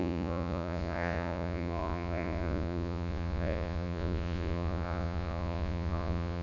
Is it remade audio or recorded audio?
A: remade